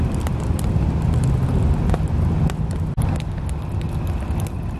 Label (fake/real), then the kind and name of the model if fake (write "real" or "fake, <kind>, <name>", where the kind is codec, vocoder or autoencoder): real